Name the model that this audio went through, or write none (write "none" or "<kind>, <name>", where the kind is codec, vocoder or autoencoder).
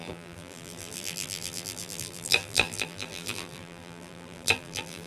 vocoder, BigVGAN v2